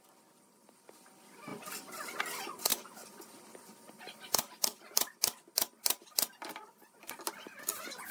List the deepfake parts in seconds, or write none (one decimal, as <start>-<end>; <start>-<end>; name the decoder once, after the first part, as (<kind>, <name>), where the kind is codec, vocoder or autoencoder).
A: 2.7-3.3 (vocoder, BigVGAN v2)